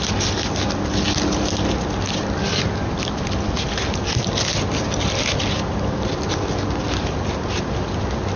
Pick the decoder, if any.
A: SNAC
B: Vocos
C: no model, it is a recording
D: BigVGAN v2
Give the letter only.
C